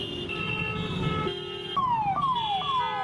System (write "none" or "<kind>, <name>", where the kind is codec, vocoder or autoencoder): none